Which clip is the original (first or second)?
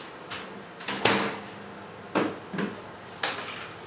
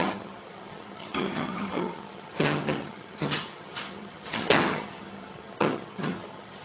first